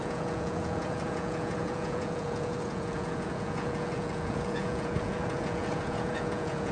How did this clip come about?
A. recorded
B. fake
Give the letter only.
B